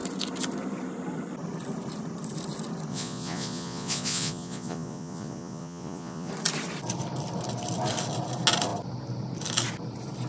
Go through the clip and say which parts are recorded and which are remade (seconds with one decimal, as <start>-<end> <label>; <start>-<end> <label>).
0.0-2.9 recorded; 2.9-6.3 remade; 6.3-10.3 recorded